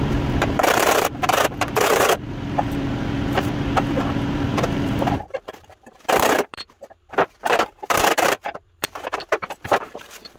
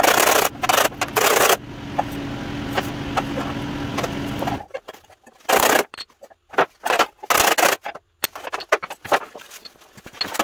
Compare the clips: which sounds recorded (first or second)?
second